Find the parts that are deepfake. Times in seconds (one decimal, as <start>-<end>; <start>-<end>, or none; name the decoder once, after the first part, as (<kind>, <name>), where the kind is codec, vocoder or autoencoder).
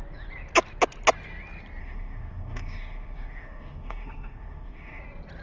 1.8-5.0 (autoencoder, DAC-VAE)